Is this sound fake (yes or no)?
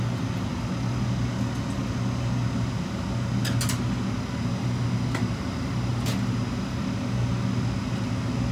no